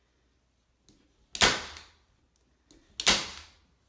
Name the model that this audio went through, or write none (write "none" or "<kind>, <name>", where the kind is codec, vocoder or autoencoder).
none